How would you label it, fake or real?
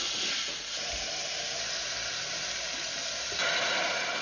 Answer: real